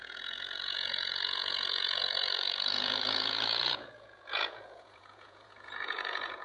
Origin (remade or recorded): remade